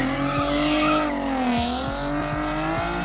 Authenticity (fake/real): real